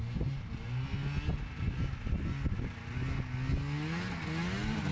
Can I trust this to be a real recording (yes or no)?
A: yes